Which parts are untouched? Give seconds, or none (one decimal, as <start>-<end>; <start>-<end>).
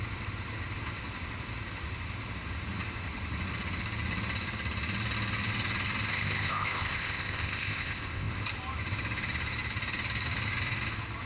0.0-6.1; 8.3-11.3